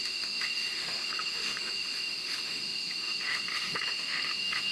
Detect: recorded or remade remade